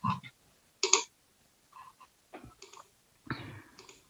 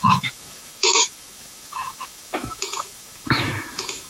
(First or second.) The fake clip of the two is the second